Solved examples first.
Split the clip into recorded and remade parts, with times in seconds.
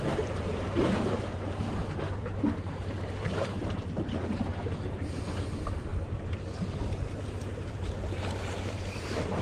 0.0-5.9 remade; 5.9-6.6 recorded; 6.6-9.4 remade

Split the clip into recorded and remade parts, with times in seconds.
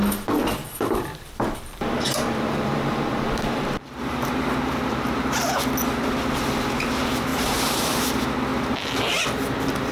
0.0-0.6 recorded; 0.6-4.3 remade; 4.3-7.3 recorded; 7.3-8.0 remade; 8.0-9.9 recorded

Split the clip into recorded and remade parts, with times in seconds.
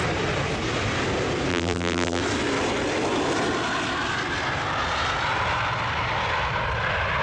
0.0-1.5 recorded; 1.5-2.2 remade; 2.2-7.2 recorded